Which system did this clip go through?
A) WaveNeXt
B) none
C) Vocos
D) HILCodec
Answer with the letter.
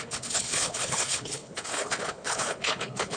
D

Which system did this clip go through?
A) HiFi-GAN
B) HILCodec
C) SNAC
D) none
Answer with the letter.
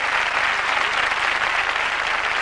D